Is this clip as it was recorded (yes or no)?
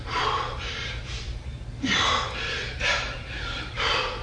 no